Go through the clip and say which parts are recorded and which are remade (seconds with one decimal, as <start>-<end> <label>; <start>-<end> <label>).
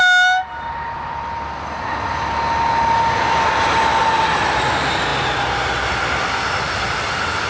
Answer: 0.0-7.5 recorded